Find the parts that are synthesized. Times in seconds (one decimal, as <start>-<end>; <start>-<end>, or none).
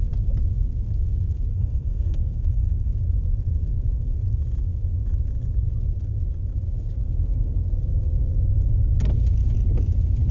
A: 1.5-2.9